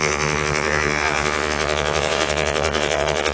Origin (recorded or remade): remade